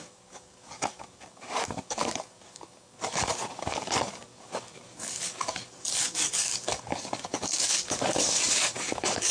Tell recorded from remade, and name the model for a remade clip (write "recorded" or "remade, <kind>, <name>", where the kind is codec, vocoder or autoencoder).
remade, codec, DAC